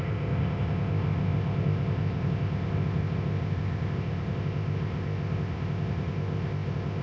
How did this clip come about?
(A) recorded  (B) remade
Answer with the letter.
B